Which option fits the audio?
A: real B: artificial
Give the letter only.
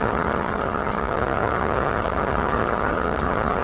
B